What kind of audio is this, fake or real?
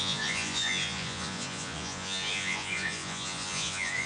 fake